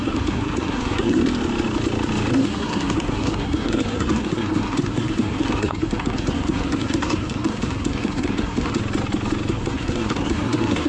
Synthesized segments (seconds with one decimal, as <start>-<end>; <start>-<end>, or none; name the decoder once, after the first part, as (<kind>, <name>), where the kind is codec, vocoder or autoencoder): 0.0-1.2 (codec, SNAC); 2.3-8.8; 9.5-10.9